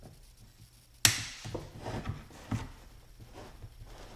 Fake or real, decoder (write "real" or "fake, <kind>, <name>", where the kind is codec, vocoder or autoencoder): real